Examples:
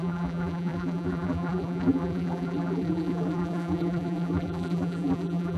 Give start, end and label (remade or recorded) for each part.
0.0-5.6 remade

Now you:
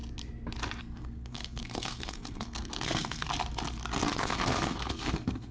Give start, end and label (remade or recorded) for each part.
0.0-0.8 recorded; 0.8-3.3 remade; 3.3-4.2 recorded; 4.2-5.5 remade